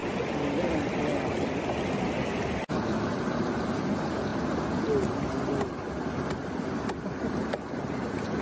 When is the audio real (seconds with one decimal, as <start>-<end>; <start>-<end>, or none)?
0.0-8.4